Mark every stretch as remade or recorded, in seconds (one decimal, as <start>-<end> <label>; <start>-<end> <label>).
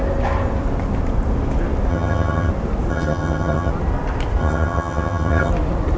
0.0-1.9 recorded; 1.9-2.5 remade; 2.5-2.9 recorded; 2.9-3.7 remade; 3.7-4.4 recorded; 4.4-5.5 remade; 5.5-6.0 recorded